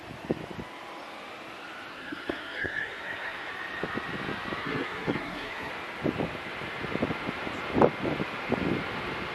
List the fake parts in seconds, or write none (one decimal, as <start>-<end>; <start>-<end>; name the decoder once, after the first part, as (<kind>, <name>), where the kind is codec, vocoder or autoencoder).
1.9-3.5 (codec, SNAC); 4.6-5.7